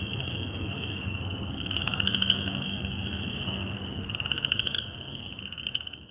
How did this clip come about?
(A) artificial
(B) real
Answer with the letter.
A